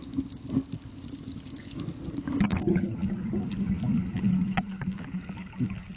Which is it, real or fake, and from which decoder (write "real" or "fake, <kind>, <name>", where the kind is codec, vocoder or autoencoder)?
real